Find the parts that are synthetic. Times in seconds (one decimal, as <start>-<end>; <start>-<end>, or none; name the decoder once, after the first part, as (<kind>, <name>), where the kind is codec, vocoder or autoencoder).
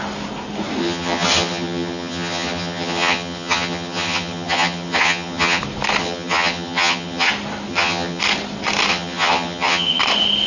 0.8-5.6 (vocoder, HiFi-GAN); 6.0-7.3; 7.7-8.2; 8.9-10.0